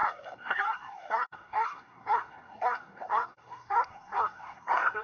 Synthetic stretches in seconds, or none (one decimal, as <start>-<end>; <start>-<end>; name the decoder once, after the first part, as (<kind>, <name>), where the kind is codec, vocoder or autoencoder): 0.0-5.0 (codec, SNAC)